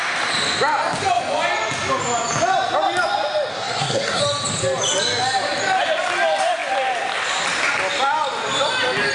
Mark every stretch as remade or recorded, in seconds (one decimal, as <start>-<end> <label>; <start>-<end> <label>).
0.0-3.5 recorded; 3.5-4.2 remade; 4.2-9.1 recorded